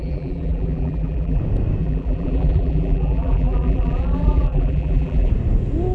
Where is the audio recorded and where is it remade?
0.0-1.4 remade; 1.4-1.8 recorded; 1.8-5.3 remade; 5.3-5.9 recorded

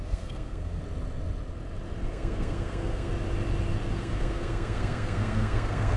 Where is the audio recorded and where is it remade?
0.0-0.8 remade; 0.8-2.1 recorded; 2.1-3.1 remade; 3.1-3.9 recorded; 3.9-6.0 remade

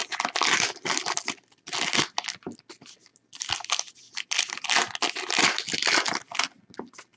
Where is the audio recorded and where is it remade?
0.0-7.2 recorded